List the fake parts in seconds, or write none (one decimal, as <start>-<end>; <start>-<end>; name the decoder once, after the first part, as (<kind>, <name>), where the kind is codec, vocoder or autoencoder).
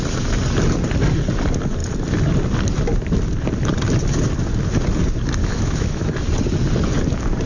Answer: 5.4-6.1 (autoencoder, DAC-VAE)